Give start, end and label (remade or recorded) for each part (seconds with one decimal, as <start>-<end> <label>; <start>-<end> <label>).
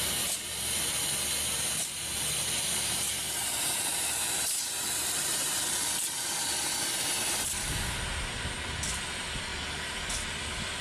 0.0-9.5 remade; 9.5-10.1 recorded; 10.1-10.8 remade